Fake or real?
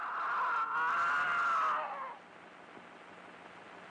real